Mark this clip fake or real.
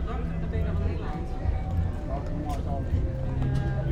real